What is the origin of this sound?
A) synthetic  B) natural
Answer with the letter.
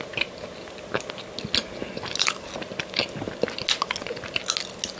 B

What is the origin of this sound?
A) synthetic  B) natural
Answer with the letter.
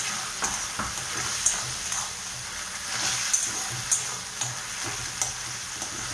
B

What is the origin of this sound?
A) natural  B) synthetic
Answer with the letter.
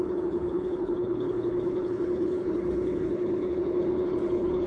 B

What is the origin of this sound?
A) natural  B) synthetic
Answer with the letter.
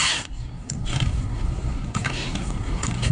B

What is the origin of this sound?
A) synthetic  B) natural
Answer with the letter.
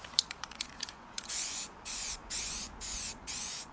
A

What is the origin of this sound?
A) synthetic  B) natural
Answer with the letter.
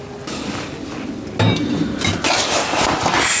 B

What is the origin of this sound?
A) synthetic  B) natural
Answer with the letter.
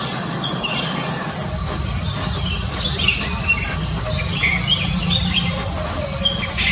B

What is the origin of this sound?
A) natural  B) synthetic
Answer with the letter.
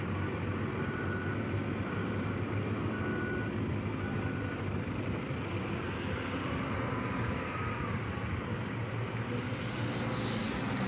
A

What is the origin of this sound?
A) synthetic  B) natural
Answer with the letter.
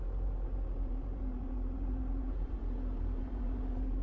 A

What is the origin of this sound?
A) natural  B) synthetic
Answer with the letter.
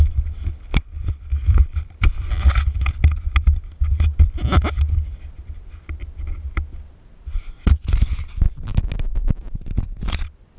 A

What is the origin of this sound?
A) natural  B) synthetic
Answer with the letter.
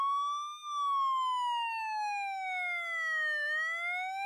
A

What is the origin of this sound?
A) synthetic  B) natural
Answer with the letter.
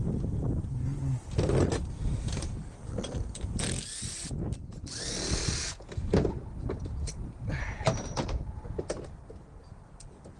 B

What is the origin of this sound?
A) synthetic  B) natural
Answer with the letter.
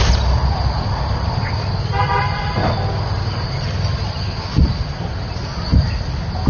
B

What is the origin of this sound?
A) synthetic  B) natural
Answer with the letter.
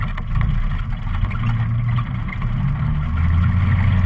B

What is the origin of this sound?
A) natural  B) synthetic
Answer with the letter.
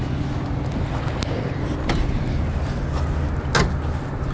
A